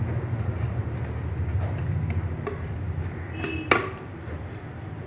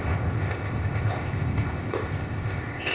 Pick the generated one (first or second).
second